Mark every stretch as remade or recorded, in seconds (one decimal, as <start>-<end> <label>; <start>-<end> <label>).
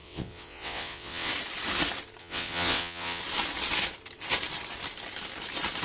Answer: 0.0-1.3 remade; 1.3-2.2 recorded; 2.2-3.2 remade; 3.2-5.8 recorded